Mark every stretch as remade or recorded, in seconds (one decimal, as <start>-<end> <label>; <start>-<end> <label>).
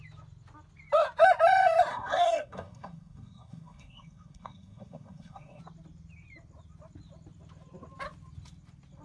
0.0-1.9 recorded; 1.9-5.6 remade; 5.6-9.0 recorded